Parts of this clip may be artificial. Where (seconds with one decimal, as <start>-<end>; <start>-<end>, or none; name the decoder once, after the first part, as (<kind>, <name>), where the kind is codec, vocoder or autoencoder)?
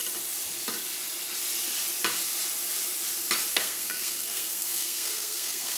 3.5-5.8 (codec, SNAC)